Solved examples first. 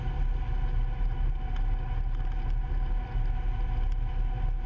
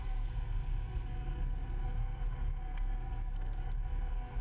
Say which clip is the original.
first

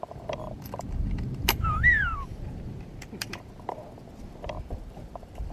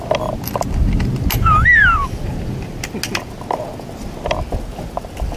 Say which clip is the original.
second